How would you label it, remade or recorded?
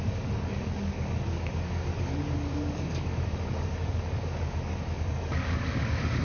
remade